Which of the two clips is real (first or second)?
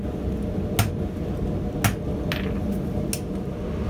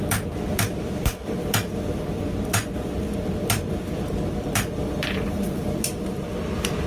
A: first